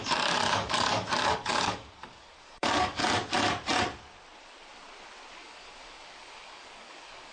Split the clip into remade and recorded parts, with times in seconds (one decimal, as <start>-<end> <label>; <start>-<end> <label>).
0.0-3.0 remade; 3.0-5.3 recorded; 5.3-7.3 remade